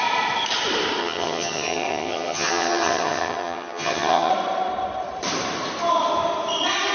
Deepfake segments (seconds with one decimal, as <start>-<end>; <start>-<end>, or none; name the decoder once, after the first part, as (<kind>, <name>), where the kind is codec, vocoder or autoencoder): 1.0-4.3 (vocoder, HiFi-GAN)